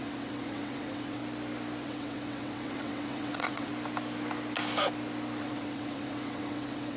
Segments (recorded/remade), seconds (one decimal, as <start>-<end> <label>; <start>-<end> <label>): 0.0-1.2 remade; 1.2-1.8 recorded; 1.8-3.7 remade; 3.7-5.4 recorded; 5.4-7.0 remade